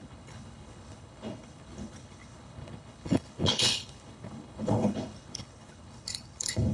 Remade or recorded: remade